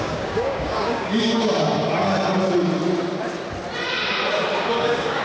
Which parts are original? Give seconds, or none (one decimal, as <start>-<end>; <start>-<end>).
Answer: 1.5-4.6